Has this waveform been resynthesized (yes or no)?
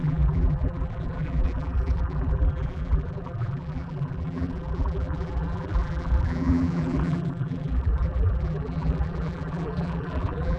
yes